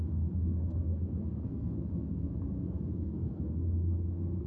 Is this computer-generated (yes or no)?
yes